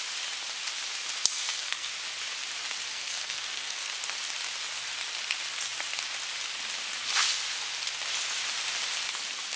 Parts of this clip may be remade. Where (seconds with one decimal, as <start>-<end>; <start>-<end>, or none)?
1.3-1.9; 2.9-3.9